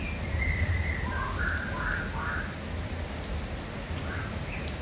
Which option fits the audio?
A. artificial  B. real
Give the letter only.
B